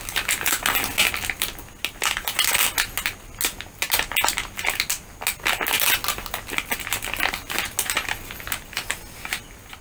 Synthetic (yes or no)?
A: no